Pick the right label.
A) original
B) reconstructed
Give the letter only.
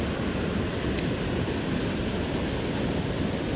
A